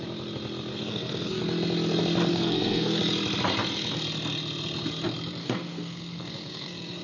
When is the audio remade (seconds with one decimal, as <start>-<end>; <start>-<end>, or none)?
0.7-1.4; 2.3-3.0; 5.4-7.0